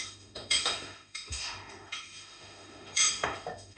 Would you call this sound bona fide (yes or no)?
no